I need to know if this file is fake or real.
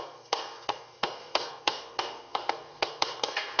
fake